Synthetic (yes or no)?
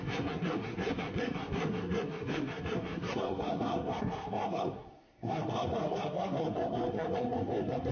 yes